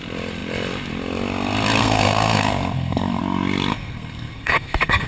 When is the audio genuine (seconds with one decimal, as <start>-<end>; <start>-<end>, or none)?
0.0-1.8; 3.2-3.7